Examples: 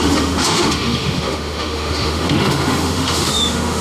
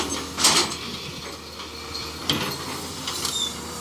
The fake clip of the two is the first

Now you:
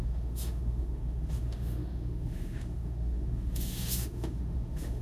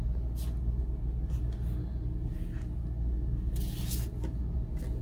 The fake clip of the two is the first